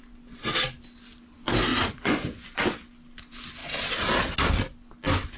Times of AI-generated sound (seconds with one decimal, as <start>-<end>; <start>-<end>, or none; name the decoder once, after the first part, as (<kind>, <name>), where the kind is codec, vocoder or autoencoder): 1.7-2.6 (vocoder, Vocos)